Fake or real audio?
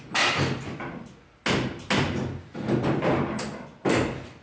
real